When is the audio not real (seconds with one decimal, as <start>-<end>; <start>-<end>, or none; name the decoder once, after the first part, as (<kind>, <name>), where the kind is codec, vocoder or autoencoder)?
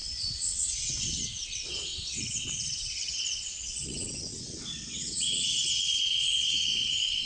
0.0-7.3 (vocoder, WaveNeXt)